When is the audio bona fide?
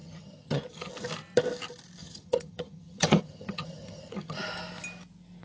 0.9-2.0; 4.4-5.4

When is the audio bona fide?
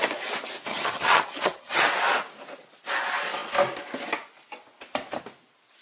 0.0-0.7; 1.8-5.8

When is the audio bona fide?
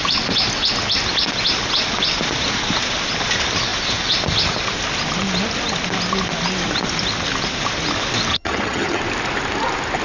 0.0-8.3; 9.0-10.0